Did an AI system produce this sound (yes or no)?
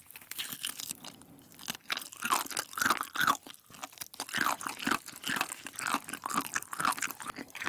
no